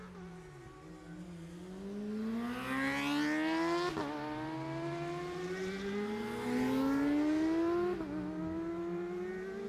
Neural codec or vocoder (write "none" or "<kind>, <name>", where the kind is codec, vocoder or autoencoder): none